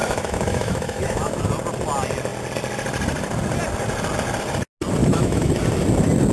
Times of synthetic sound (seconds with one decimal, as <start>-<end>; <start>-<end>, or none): 0.0-1.4; 5.0-5.5